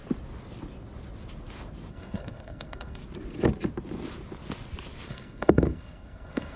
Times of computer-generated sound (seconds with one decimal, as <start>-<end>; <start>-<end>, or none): 1.9-3.0; 5.1-6.6